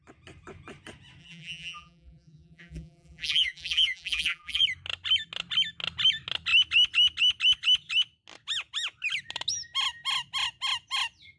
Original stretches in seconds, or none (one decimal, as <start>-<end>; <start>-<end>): 0.0-1.2; 4.6-11.4